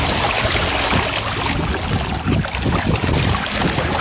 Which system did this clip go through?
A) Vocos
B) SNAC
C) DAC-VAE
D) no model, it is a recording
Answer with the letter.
D